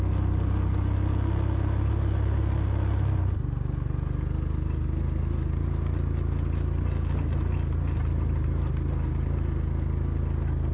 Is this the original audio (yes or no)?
yes